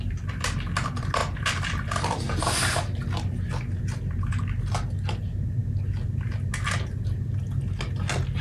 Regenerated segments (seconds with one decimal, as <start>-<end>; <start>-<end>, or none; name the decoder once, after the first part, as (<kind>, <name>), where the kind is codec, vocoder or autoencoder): none